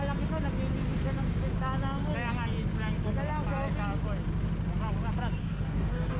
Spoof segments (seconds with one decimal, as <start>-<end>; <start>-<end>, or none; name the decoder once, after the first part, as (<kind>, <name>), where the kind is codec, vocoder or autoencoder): 5.4-6.2 (codec, DAC)